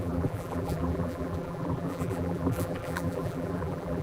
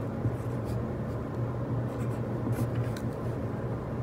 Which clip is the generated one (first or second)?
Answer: first